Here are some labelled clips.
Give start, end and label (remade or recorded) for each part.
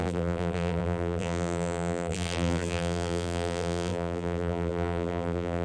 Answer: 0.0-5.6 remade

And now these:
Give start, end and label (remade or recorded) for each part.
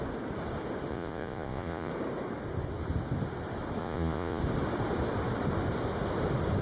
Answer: 0.0-0.9 recorded; 0.9-1.9 remade; 1.9-3.8 recorded; 3.8-4.4 remade; 4.4-6.6 recorded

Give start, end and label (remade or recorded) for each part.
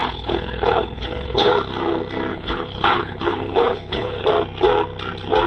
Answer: 0.0-1.5 remade; 1.5-2.3 recorded; 2.3-4.2 remade; 4.2-5.5 recorded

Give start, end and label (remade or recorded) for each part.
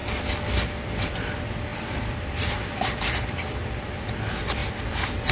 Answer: 0.0-1.7 recorded; 1.7-3.6 remade; 3.6-4.6 recorded; 4.6-5.3 remade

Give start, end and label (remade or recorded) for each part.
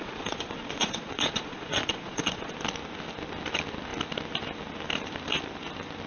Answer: 0.0-2.5 remade; 2.5-6.1 recorded